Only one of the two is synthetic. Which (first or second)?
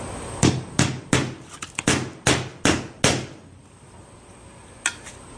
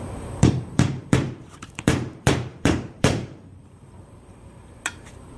second